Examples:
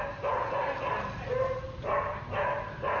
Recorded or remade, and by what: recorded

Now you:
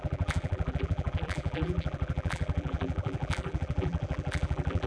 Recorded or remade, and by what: remade, vocoder, BigVGAN v2